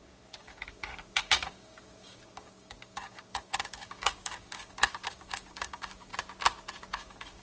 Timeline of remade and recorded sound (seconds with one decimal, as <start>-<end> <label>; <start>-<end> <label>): 0.0-6.1 remade; 6.1-6.8 recorded; 6.8-7.4 remade